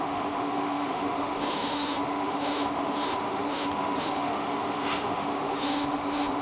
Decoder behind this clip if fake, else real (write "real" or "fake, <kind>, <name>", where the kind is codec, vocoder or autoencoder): fake, autoencoder, DAC-VAE